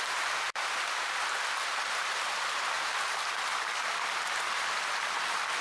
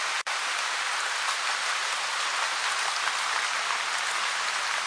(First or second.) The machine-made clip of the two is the first